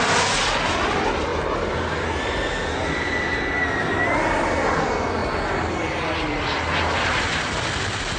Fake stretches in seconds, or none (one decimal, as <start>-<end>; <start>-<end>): none